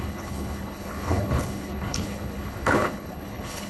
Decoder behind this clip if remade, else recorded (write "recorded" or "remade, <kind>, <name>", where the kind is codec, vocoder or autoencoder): remade, codec, HILCodec